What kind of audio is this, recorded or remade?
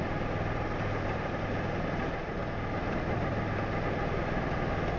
recorded